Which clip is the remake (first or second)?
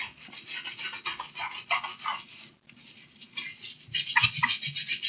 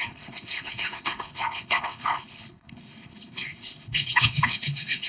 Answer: second